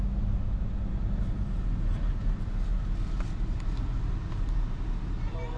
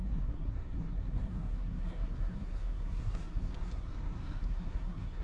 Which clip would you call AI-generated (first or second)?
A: second